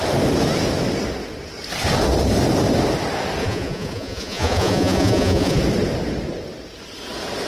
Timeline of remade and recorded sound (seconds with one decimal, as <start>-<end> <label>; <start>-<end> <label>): 0.0-3.4 recorded; 3.4-5.6 remade; 5.6-7.5 recorded